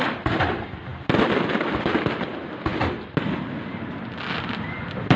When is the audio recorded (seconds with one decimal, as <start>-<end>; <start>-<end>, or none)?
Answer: 0.0-5.2